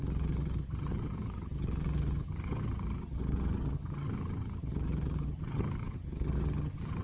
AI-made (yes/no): yes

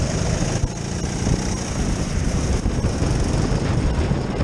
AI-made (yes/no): no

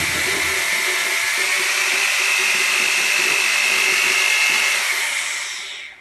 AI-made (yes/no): no